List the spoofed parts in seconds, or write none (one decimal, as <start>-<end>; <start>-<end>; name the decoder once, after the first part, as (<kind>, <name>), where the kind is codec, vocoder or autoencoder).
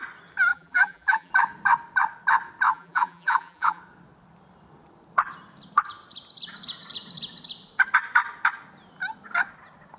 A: 0.5-1.3 (vocoder, BigVGAN v2); 2.7-3.8